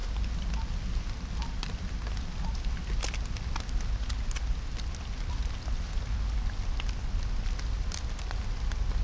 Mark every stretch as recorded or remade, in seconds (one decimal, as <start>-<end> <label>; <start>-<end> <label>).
0.0-9.0 recorded